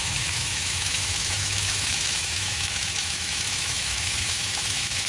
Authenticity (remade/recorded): remade